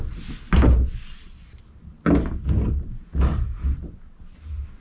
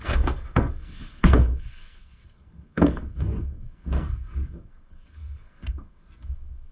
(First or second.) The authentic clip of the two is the first